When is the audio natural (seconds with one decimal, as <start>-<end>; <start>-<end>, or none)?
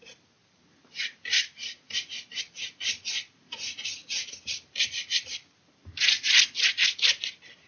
0.0-0.4; 2.4-7.7